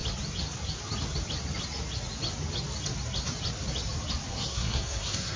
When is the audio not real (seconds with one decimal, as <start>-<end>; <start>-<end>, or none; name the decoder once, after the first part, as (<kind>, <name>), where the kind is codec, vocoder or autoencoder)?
4.3-5.4 (codec, SNAC)